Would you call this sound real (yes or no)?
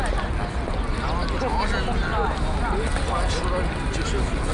yes